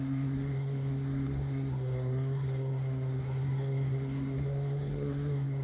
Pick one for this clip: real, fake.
fake